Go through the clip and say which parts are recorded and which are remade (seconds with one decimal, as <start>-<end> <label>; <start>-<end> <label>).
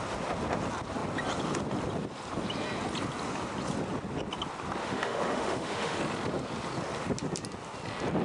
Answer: 0.0-4.8 recorded; 4.8-6.0 remade; 6.0-8.2 recorded